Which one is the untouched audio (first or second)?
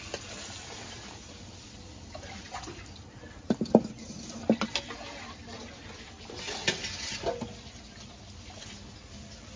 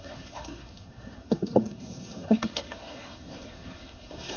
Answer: first